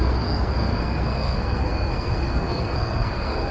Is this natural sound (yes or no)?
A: no